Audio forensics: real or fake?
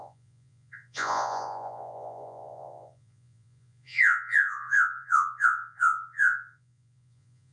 fake